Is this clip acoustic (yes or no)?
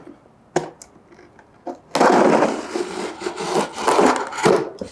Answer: yes